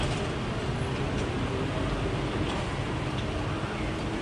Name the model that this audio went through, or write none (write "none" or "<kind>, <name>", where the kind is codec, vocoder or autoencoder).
none